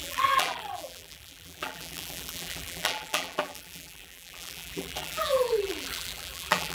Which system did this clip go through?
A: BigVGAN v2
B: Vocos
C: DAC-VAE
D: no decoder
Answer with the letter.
A